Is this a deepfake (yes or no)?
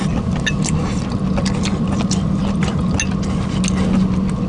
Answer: no